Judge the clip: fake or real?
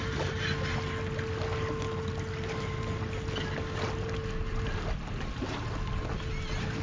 real